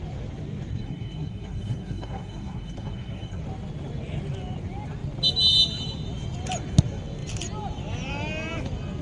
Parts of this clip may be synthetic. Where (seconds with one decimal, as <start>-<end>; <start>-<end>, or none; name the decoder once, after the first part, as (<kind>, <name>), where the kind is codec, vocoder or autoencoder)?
0.7-3.4 (codec, SNAC)